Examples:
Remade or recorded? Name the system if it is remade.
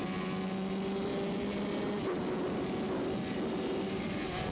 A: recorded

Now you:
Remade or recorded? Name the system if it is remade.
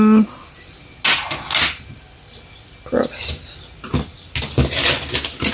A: recorded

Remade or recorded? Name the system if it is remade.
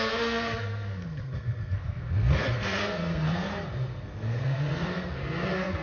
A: remade, codec, SNAC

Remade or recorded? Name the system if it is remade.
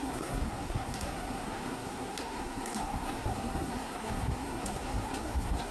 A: remade, codec, SNAC